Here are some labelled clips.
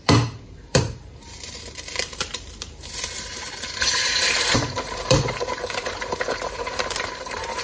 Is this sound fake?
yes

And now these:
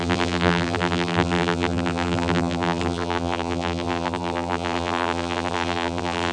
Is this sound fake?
yes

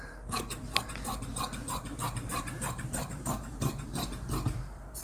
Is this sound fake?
yes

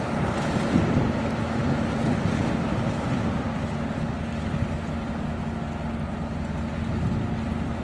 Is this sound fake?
no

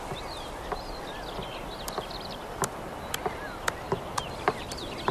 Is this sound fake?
no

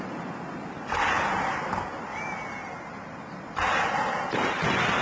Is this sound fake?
no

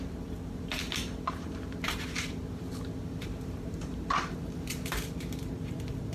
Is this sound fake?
yes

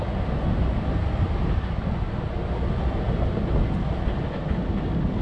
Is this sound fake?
no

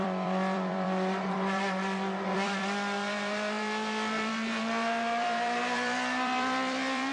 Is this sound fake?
yes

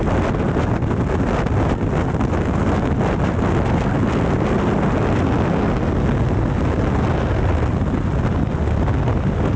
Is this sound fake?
no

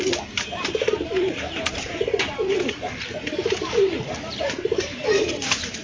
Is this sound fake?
yes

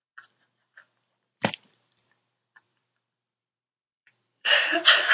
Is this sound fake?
yes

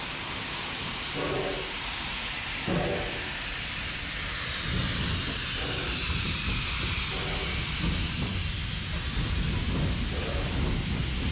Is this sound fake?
no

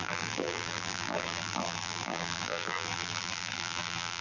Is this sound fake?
yes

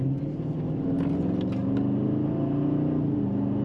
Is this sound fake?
no